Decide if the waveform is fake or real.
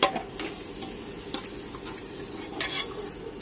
real